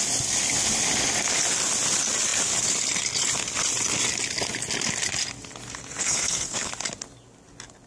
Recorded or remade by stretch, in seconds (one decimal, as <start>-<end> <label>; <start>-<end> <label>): 0.0-6.0 recorded; 6.0-6.7 remade; 6.7-7.9 recorded